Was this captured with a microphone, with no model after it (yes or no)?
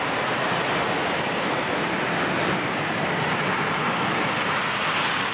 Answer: yes